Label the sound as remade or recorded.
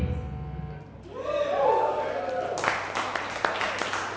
recorded